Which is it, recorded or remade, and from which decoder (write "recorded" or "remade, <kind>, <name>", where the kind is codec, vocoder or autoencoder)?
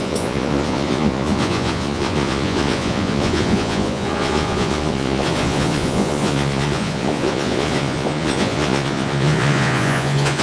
remade, vocoder, Vocos